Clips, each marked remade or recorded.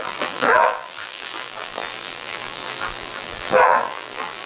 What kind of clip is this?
remade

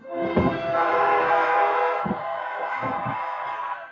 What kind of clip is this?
remade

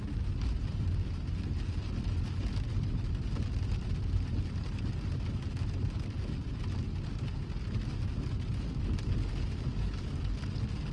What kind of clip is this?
recorded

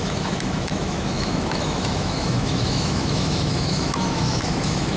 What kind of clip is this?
remade